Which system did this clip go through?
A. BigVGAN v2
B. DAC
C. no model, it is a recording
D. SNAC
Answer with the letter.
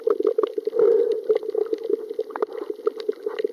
C